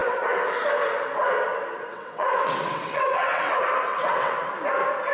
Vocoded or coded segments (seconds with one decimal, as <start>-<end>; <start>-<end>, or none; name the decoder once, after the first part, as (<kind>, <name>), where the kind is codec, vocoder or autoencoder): 0.0-0.6 (vocoder, WaveNeXt); 1.9-3.5; 3.9-4.5